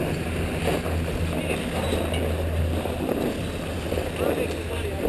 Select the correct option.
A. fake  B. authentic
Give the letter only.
B